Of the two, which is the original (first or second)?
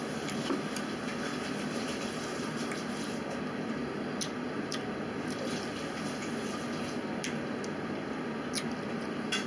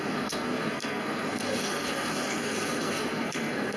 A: first